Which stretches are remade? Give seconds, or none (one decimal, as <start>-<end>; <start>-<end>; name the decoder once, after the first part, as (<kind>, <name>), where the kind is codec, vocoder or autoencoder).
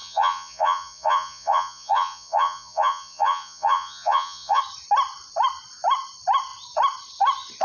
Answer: 0.0-4.6 (vocoder, Vocos)